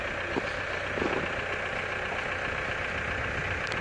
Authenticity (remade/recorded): recorded